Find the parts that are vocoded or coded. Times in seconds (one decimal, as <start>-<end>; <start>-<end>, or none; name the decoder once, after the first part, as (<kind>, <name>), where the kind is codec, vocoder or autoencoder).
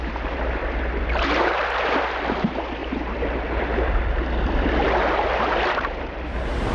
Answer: 0.0-0.6 (vocoder, BigVGAN v2); 2.0-6.7